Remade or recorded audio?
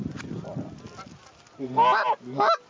recorded